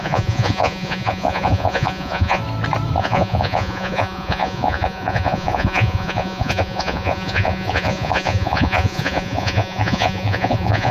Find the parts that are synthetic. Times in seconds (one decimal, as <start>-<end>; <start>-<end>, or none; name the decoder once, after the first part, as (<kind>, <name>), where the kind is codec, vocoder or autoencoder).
0.0-2.4 (vocoder, Vocos); 3.0-10.9